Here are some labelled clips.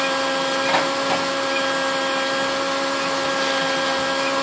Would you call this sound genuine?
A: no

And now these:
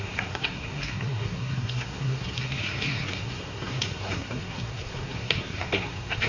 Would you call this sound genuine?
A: no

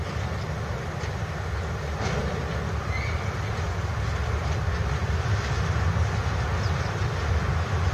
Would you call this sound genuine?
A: yes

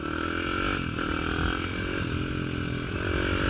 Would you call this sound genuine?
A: yes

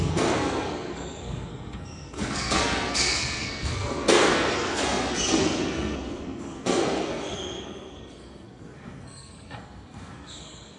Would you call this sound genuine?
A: no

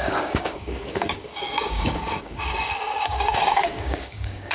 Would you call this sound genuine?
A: no